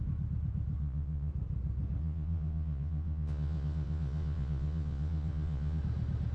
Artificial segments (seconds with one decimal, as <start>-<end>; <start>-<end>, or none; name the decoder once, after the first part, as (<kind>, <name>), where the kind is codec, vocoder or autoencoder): 0.8-1.3 (vocoder, Vocos); 2.0-5.8